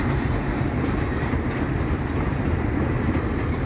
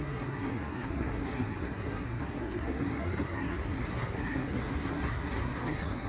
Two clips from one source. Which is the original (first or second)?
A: first